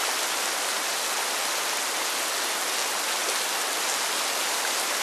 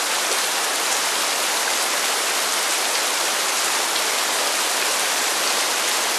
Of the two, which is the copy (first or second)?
second